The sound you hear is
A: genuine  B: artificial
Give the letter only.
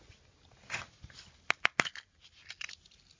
A